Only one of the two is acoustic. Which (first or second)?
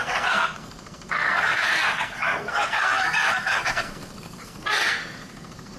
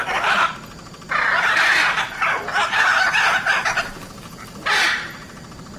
second